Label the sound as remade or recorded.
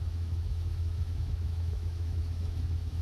remade